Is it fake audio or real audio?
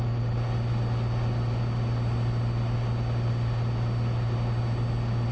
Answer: real